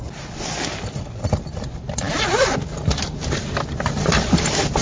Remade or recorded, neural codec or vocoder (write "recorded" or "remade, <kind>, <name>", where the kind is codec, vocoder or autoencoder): recorded